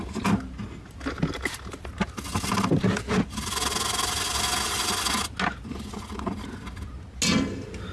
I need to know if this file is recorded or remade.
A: recorded